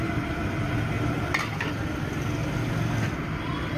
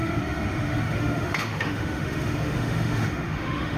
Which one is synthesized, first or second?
second